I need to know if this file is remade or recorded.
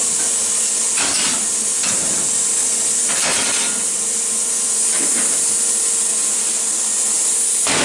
recorded